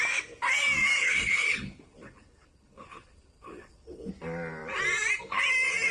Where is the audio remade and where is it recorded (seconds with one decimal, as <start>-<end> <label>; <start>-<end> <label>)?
0.0-1.0 recorded; 1.0-4.1 remade; 4.1-5.9 recorded